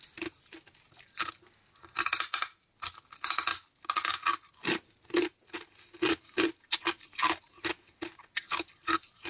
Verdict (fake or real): real